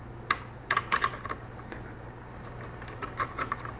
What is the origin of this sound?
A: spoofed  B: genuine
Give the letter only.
B